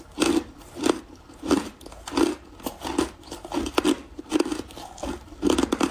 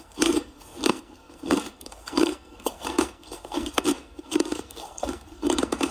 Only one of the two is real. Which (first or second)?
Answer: first